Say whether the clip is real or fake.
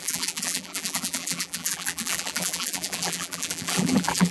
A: fake